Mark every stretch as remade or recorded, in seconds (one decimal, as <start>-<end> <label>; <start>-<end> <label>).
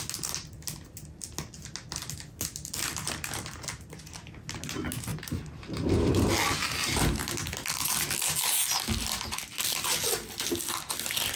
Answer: 0.0-5.1 recorded; 5.1-6.3 remade; 6.3-11.4 recorded